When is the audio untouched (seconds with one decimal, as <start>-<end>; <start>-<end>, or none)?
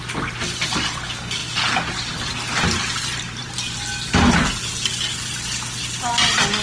0.0-6.6